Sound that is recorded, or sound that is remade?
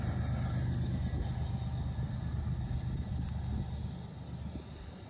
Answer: recorded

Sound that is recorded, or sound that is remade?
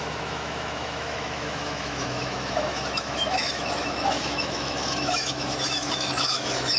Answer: remade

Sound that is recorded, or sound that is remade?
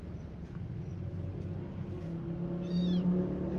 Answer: recorded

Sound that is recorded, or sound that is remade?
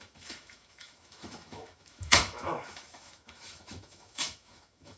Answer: remade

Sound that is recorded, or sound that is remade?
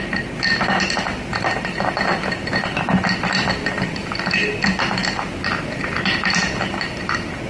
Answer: recorded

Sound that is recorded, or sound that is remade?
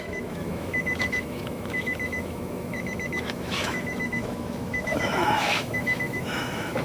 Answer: remade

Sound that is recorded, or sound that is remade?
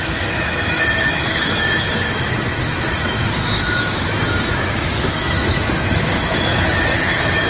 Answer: remade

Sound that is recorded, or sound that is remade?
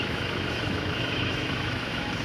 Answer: remade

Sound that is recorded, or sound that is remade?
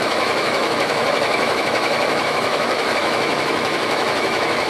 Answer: remade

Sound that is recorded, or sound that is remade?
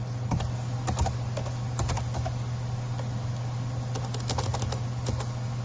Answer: recorded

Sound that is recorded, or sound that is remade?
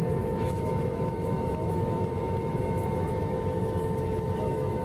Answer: remade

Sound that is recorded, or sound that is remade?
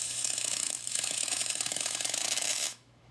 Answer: remade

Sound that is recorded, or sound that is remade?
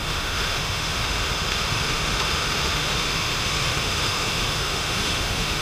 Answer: remade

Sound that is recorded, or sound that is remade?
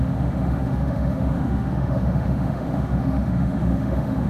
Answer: remade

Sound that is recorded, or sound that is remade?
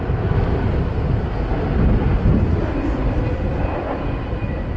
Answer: recorded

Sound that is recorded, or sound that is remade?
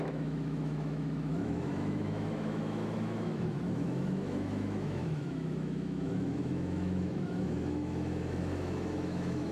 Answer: remade